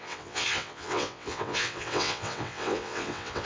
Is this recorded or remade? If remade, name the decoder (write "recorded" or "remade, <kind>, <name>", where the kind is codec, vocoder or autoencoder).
remade, vocoder, WaveNeXt